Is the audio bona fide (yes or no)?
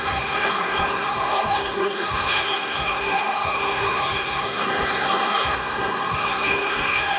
no